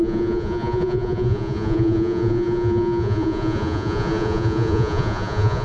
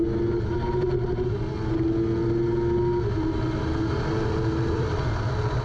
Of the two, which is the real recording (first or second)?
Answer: second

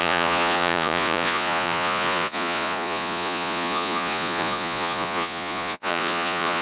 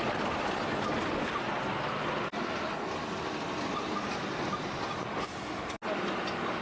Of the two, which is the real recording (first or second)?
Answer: second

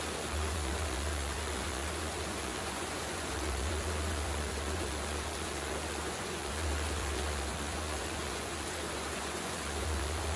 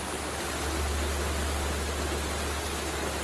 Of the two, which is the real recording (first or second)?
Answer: second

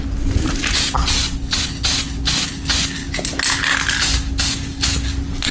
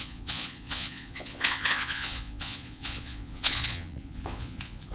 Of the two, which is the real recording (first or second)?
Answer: first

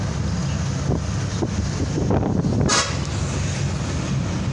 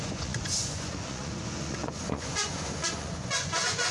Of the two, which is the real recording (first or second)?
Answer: first